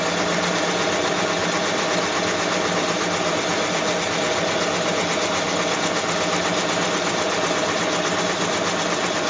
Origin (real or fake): real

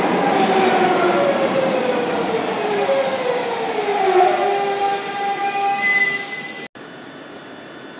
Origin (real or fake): real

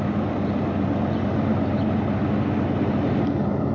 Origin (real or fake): real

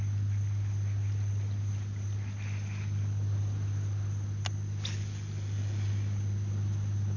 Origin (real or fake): real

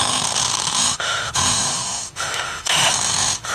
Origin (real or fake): fake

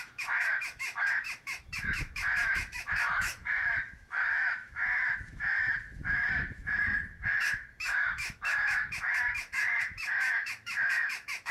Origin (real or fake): fake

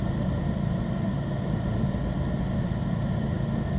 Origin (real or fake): real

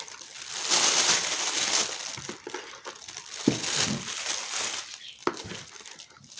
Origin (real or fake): real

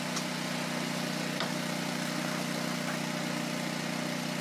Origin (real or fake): real